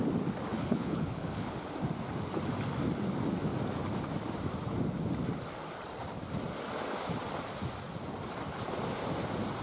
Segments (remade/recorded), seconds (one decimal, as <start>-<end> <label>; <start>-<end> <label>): 0.0-0.5 recorded; 0.5-1.5 remade; 1.5-9.6 recorded